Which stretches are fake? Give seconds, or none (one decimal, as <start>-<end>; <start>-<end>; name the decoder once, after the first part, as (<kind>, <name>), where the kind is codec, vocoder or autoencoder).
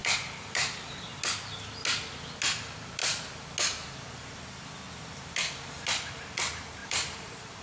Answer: 0.0-1.2 (vocoder, BigVGAN v2); 6.8-7.6